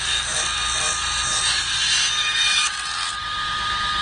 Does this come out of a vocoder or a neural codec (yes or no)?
no